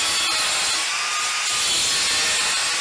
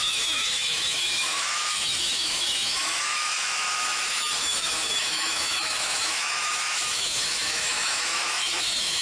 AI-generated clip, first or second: second